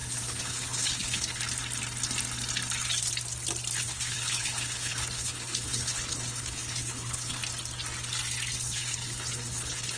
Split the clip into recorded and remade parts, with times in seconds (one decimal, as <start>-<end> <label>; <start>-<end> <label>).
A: 0.0-1.4 remade; 1.4-3.8 recorded; 3.8-7.4 remade; 7.4-8.5 recorded; 8.5-10.0 remade